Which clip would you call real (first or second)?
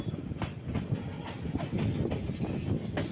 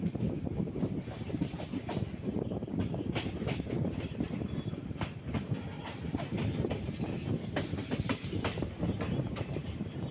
first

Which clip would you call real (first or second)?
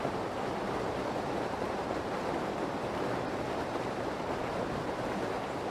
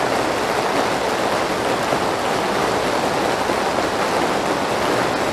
second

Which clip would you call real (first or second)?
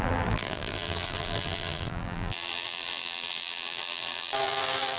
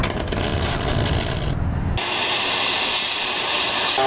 second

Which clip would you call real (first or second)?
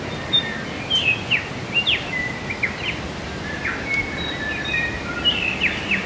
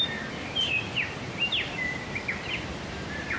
first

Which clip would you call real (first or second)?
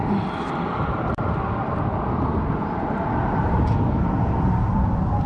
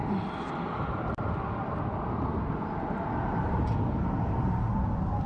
second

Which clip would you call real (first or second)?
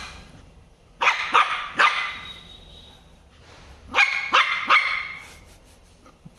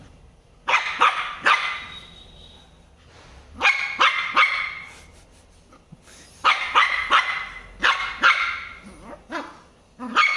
second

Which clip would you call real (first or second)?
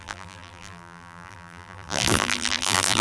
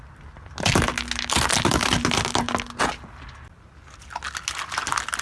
second